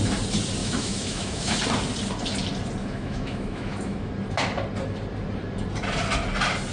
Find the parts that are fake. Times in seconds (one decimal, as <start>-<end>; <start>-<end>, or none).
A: 0.6-1.6; 2.8-4.1